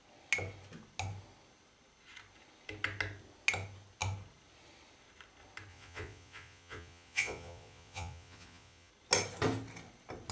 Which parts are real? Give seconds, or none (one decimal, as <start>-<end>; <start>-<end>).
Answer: 0.0-5.7; 8.9-10.3